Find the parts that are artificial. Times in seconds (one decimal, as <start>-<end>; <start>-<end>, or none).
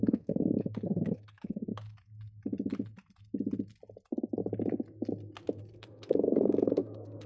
0.0-1.7; 5.6-7.3